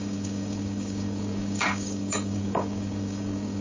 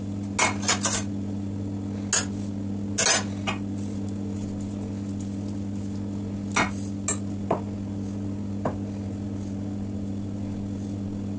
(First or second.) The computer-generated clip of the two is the first